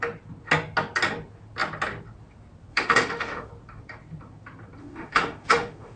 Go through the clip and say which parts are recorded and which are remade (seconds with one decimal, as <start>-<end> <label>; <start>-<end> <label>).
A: 0.0-2.7 recorded; 2.7-3.5 remade; 3.5-4.8 recorded; 4.8-6.0 remade